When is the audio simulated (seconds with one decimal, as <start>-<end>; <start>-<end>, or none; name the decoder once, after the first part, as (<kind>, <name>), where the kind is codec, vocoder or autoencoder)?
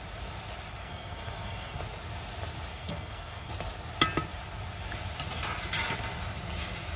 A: 0.8-1.8 (codec, SNAC); 2.7-3.5